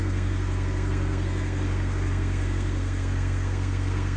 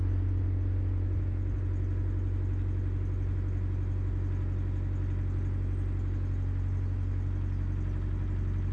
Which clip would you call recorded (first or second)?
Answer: second